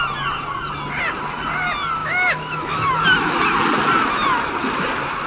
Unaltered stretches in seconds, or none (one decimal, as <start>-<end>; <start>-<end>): 0.0-2.0; 3.0-5.3